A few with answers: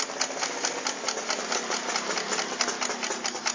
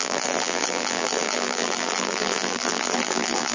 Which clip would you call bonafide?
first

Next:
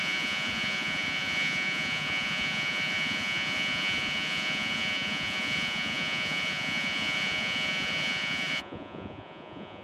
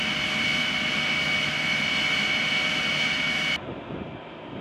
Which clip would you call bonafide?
second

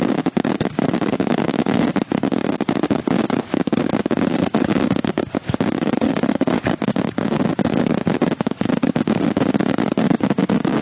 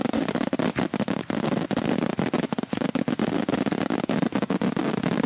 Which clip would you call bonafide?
second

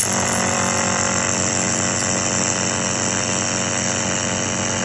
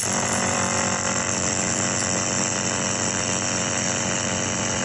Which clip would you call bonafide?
first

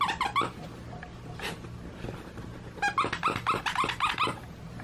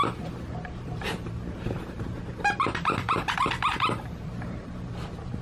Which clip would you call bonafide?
first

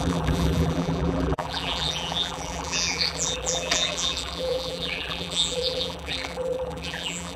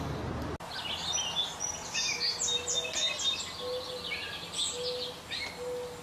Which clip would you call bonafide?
second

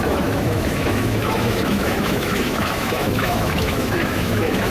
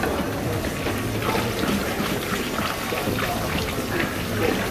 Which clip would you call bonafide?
second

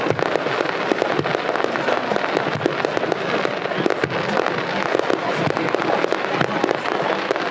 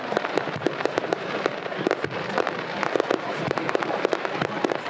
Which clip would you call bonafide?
first